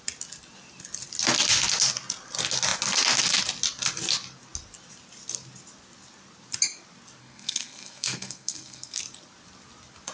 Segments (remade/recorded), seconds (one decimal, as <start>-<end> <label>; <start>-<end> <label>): 0.0-7.2 recorded; 7.2-9.0 remade; 9.0-10.1 recorded

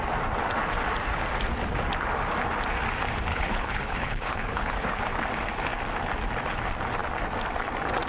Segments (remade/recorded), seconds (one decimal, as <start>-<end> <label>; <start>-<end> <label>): 0.0-3.3 recorded; 3.3-5.0 remade; 5.0-8.1 recorded

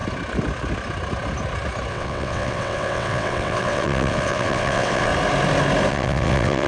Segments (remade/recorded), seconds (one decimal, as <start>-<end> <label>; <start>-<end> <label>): 0.0-1.9 recorded; 1.9-5.1 remade; 5.1-5.9 recorded; 5.9-6.7 remade

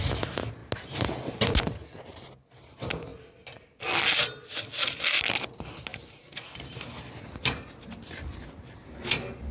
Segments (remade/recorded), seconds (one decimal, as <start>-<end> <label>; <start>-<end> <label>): 0.0-9.5 recorded

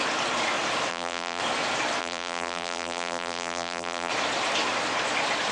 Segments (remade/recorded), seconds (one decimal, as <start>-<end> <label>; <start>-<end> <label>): 0.0-0.9 recorded; 0.9-1.4 remade; 1.4-2.0 recorded; 2.0-4.1 remade; 4.1-5.5 recorded

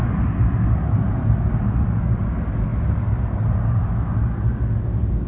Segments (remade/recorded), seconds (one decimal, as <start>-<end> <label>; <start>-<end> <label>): 0.0-5.3 recorded

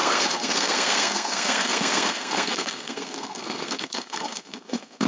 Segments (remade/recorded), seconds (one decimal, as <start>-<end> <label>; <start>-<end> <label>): 0.0-5.1 remade